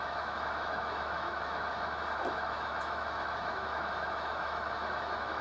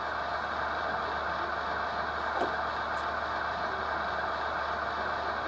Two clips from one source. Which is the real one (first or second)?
second